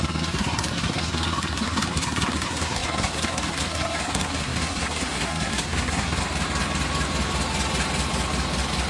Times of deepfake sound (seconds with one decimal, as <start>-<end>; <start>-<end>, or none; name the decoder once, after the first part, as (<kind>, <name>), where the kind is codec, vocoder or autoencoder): 0.0-6.2 (codec, SNAC)